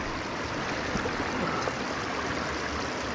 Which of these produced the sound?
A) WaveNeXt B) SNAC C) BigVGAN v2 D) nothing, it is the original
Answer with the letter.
D